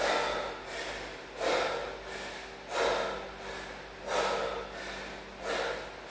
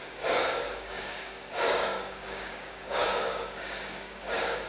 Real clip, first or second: first